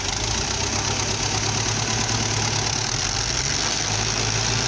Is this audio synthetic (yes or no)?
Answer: no